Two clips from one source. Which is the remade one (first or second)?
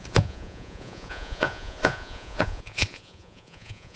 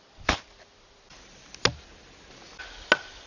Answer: first